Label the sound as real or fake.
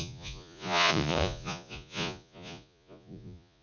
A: fake